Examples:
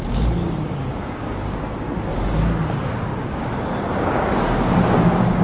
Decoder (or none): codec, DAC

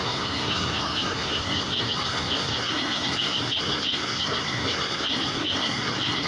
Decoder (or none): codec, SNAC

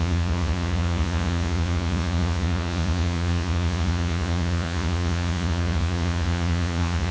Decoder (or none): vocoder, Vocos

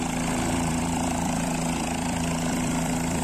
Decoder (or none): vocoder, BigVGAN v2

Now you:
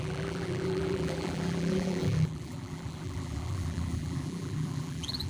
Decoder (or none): vocoder, BigVGAN v2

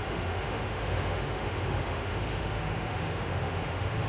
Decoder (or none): autoencoder, DAC-VAE